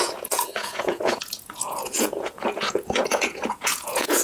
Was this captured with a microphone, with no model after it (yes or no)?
no